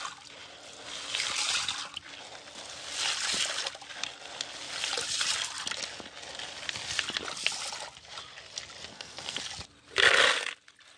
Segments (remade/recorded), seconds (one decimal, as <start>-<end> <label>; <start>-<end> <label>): 0.0-8.9 recorded; 8.9-9.4 remade; 9.4-11.0 recorded